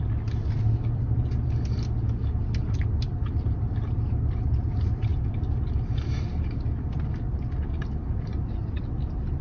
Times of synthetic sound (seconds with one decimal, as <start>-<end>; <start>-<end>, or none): none